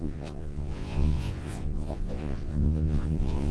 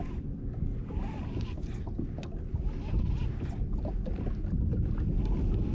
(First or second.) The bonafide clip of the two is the second